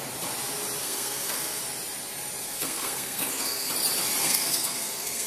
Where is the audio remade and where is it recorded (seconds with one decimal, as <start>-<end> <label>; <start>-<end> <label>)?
0.0-0.8 recorded; 0.8-1.6 remade; 1.6-2.4 recorded; 2.4-3.7 remade; 3.7-4.2 recorded; 4.2-5.3 remade